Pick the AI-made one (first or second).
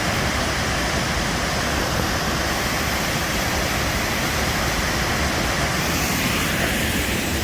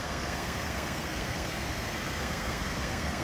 second